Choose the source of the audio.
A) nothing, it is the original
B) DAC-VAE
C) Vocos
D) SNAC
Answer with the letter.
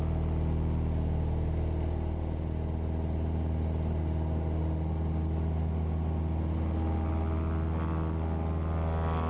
A